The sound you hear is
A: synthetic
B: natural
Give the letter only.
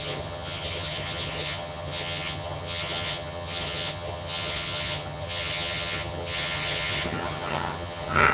A